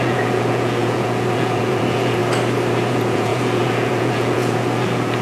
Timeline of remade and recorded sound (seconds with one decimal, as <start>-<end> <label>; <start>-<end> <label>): 0.0-2.2 remade; 2.2-2.9 recorded; 2.9-5.2 remade